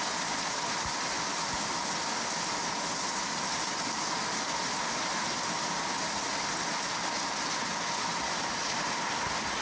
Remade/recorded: recorded